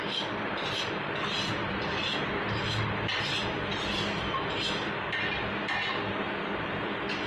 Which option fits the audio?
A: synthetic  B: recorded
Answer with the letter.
B